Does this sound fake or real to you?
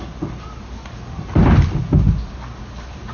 real